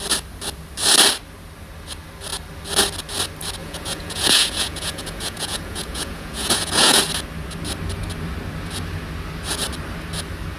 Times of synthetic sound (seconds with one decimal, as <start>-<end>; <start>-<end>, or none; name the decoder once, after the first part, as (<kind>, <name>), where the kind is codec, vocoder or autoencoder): 3.6-7.0 (vocoder, Vocos)